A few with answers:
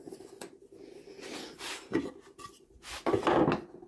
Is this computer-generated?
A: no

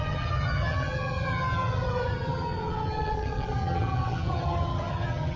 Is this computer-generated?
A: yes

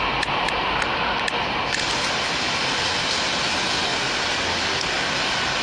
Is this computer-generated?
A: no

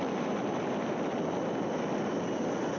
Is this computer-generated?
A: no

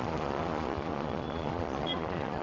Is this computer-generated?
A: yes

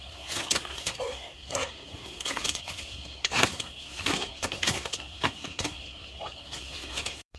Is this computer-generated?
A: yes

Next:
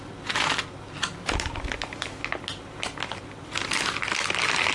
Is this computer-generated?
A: no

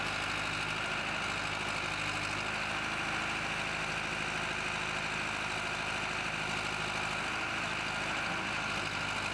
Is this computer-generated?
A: no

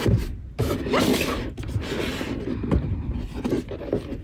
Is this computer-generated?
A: no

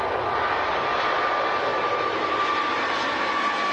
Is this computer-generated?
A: no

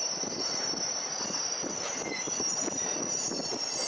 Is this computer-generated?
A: no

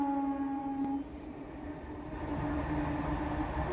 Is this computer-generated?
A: no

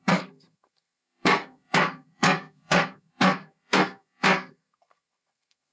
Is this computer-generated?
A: yes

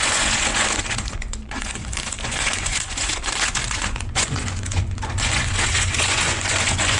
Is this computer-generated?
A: yes